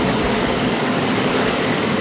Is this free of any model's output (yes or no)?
no